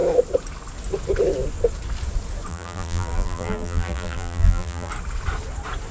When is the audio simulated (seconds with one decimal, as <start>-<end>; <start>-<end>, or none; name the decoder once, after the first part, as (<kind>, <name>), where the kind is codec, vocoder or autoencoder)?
2.5-4.9 (vocoder, BigVGAN v2)